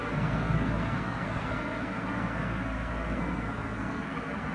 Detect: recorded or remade remade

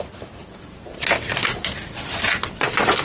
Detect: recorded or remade recorded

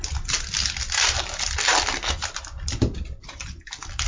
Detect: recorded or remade recorded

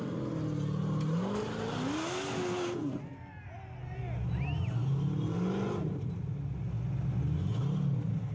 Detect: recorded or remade recorded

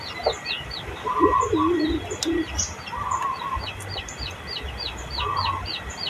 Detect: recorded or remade recorded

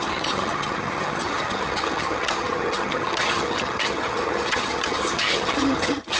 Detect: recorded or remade remade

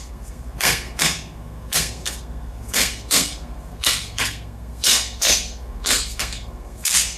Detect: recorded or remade remade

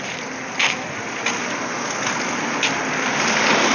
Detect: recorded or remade recorded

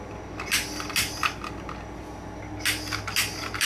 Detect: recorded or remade recorded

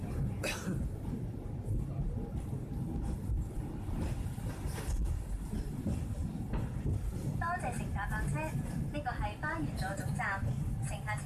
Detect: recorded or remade recorded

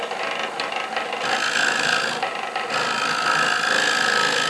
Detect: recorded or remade recorded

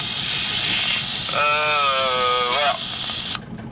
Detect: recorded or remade recorded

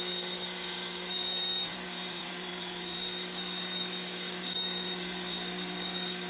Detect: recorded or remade remade